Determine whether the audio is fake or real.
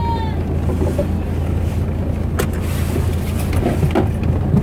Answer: real